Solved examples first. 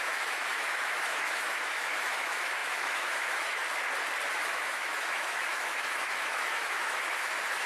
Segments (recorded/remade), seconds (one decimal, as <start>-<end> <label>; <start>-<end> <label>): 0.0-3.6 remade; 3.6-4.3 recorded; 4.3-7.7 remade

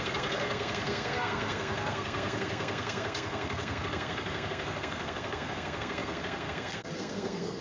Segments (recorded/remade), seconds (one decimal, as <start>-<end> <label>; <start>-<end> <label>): 0.0-7.6 remade

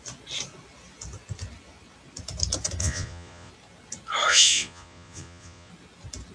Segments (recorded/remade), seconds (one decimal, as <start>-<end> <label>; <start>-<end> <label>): 0.0-2.8 recorded; 2.8-3.5 remade; 3.5-4.3 recorded; 4.3-5.7 remade; 5.7-6.3 recorded

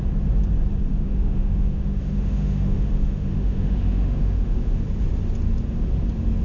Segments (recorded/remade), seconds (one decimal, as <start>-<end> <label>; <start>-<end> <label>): 0.0-0.9 recorded; 0.9-4.7 remade; 4.7-6.4 recorded

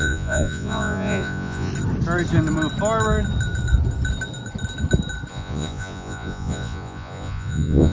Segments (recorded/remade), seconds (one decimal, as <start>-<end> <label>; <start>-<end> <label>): 0.0-1.7 remade; 1.7-5.3 recorded; 5.3-7.9 remade

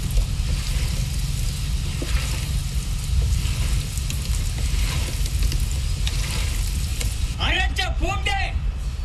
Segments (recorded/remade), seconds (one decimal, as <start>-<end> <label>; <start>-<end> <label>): 0.0-6.9 recorded; 6.9-8.5 remade; 8.5-9.0 recorded

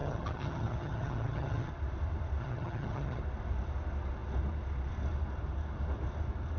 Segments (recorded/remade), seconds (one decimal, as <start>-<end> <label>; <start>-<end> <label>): 0.0-1.7 remade; 1.7-2.4 recorded; 2.4-3.2 remade; 3.2-6.6 recorded